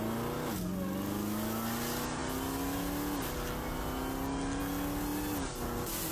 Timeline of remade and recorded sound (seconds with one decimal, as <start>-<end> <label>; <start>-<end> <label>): 0.0-6.1 recorded